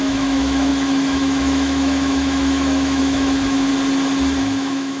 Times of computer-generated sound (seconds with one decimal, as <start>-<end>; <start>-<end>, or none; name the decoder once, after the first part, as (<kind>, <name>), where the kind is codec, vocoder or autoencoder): 0.0-3.7 (autoencoder, DAC-VAE); 4.4-5.0